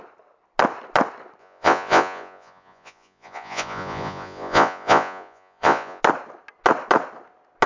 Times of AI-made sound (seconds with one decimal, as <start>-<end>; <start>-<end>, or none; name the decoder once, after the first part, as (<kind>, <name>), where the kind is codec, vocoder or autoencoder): 1.4-6.0 (vocoder, Vocos)